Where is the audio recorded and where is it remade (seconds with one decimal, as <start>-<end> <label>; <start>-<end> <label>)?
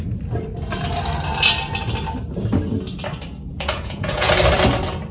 0.0-3.5 recorded; 3.5-4.3 remade; 4.3-5.1 recorded